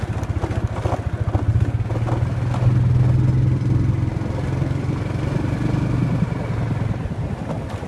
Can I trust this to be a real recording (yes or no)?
yes